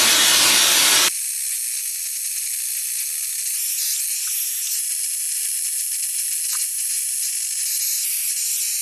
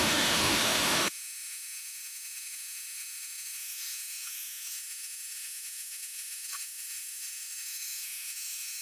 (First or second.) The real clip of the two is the first